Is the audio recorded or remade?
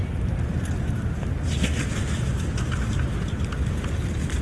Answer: recorded